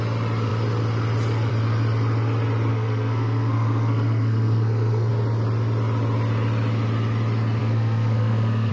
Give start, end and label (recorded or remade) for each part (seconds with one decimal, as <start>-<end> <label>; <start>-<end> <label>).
0.0-2.7 recorded; 2.7-5.1 remade; 5.1-7.6 recorded; 7.6-8.7 remade

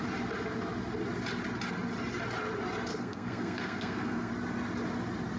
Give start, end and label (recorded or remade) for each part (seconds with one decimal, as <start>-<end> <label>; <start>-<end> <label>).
0.0-2.9 recorded; 2.9-4.3 remade; 4.3-5.4 recorded

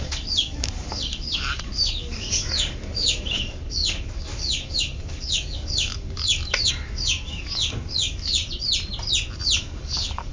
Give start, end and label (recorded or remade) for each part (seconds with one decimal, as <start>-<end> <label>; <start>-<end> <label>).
0.0-8.4 remade; 8.4-9.6 recorded; 9.6-10.3 remade